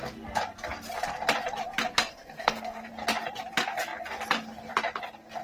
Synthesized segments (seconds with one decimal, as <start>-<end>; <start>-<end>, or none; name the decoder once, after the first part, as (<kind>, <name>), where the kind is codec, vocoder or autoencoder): 1.9-2.9 (codec, SNAC)

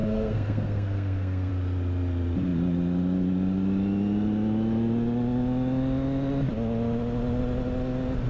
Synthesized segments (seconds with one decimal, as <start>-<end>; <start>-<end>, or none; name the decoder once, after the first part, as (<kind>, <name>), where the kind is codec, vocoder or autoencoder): 0.0-1.5 (codec, SNAC)

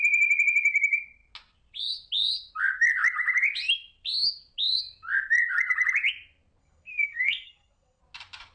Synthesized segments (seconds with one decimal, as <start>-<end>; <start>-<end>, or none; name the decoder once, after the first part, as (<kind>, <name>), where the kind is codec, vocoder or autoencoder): 6.6-8.0 (codec, SNAC)

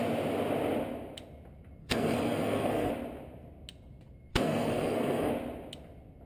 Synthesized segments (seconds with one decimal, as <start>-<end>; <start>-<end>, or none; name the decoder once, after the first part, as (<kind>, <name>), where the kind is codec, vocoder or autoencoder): 1.8-2.9 (codec, SNAC); 4.3-5.3

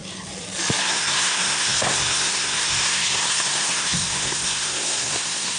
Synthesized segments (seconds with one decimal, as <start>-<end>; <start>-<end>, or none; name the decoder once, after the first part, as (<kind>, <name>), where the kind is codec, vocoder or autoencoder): 0.8-5.6 (codec, SNAC)

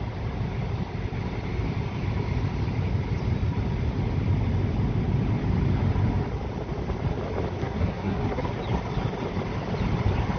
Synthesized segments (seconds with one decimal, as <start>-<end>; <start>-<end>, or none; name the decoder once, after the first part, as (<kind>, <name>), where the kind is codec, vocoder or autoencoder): 7.6-8.5 (codec, SNAC)

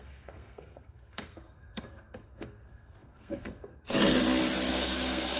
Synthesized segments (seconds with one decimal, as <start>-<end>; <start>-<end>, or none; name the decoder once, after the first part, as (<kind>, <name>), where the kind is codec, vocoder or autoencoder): 0.0-4.2 (codec, SNAC); 4.7-5.4

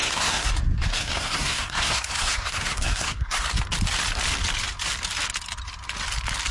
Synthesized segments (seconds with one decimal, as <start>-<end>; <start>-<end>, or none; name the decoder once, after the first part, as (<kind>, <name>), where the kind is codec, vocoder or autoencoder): 0.0-0.5 (codec, SNAC); 0.9-3.5